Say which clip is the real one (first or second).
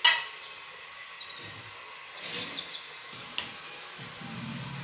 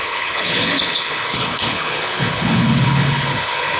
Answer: first